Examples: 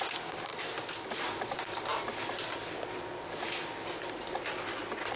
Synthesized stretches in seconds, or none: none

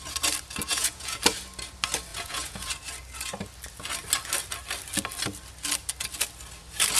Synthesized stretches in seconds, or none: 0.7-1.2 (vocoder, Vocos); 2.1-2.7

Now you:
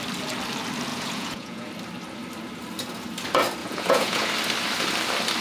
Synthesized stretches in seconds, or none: 0.9-1.7 (vocoder, Vocos); 3.6-4.3